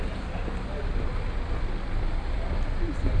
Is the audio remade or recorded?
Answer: recorded